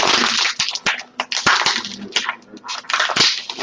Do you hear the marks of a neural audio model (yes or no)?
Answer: no